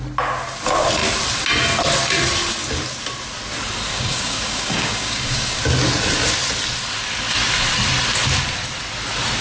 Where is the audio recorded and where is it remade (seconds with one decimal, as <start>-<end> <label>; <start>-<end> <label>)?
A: 0.0-3.9 recorded; 3.9-5.6 remade; 5.6-9.4 recorded